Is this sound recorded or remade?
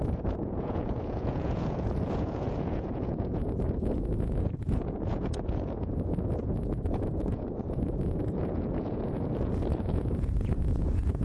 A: remade